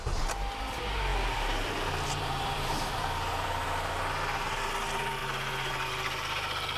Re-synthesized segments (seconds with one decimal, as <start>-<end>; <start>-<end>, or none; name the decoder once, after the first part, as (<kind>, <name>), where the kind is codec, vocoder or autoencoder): 1.1-4.0 (vocoder, BigVGAN v2)